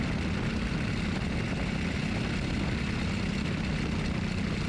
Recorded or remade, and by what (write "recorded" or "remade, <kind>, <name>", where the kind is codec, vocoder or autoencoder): recorded